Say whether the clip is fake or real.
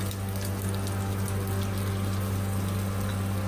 real